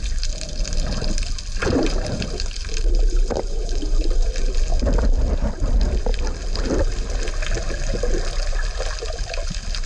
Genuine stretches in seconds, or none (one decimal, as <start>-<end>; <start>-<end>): 0.0-1.6; 4.5-9.9